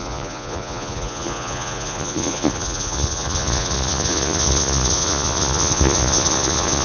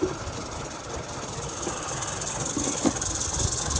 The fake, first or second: first